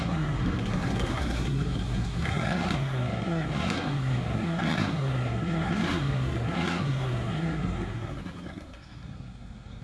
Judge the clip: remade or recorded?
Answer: remade